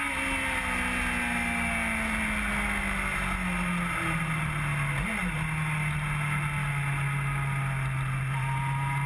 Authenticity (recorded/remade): recorded